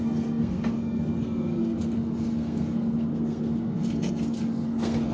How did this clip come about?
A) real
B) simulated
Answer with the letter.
B